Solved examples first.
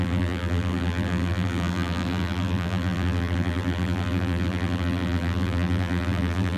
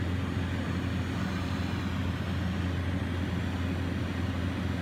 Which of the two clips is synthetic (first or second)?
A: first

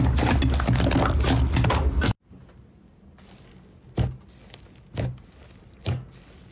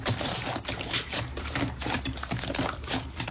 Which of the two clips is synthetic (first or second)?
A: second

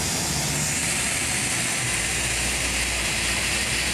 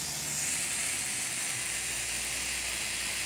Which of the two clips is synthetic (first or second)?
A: first